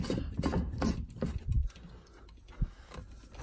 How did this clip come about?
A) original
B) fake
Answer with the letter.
A